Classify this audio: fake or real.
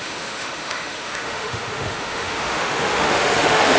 fake